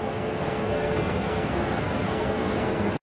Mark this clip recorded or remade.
remade